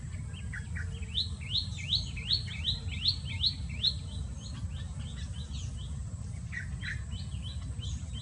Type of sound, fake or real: real